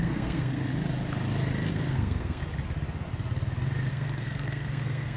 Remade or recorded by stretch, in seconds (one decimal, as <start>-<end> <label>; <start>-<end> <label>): 0.0-0.7 remade; 0.7-1.7 recorded; 1.7-2.4 remade; 2.4-3.9 recorded; 3.9-5.2 remade